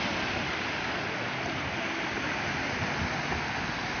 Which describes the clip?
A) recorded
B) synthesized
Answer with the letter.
A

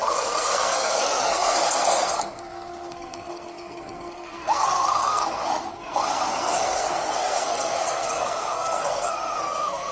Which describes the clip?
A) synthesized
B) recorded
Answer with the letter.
A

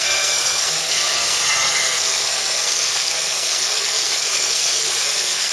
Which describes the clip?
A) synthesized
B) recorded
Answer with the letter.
A